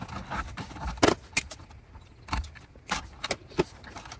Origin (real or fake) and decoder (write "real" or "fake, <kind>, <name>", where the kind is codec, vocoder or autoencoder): real